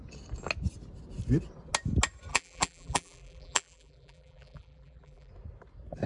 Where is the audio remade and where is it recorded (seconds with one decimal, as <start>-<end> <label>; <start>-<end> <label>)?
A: 0.0-2.3 recorded; 2.3-5.3 remade; 5.3-6.1 recorded